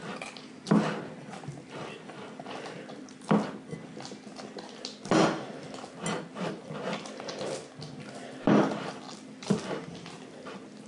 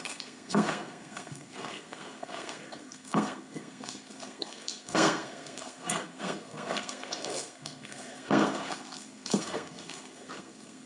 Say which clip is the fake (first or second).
second